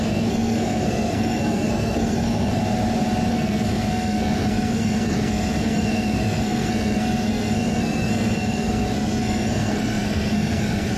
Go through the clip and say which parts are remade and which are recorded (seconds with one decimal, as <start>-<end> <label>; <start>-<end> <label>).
0.0-2.6 remade; 2.6-3.3 recorded; 3.3-11.0 remade